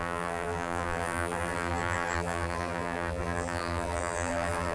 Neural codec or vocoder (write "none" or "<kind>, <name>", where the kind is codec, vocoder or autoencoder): vocoder, BigVGAN v2